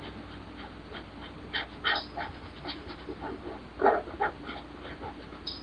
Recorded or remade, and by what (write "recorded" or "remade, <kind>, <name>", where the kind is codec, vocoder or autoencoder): recorded